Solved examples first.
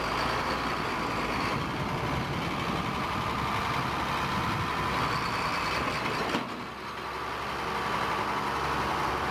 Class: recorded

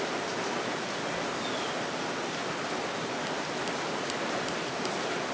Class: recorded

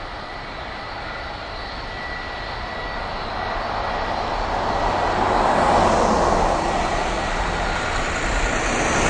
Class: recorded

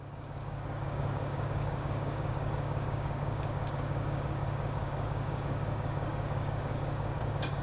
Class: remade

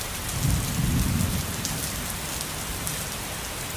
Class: recorded